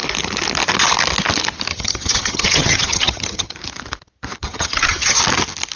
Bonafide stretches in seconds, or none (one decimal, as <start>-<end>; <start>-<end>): 0.0-1.7; 3.5-4.4; 5.2-5.8